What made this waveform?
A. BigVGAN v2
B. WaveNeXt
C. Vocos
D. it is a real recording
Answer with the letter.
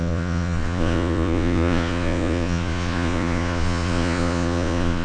C